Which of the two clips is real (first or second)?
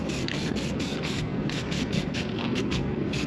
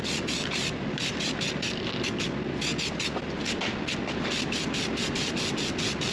second